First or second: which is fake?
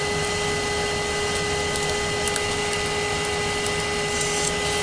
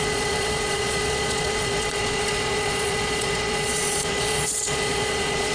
second